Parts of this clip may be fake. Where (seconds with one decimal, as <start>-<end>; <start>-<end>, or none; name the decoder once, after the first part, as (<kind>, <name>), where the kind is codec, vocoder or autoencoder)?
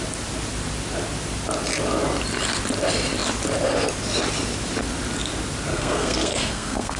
5.7-7.0 (codec, SNAC)